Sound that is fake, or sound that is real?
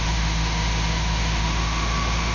fake